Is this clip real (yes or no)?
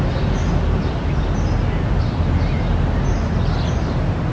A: yes